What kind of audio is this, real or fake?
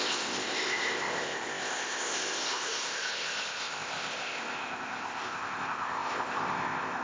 fake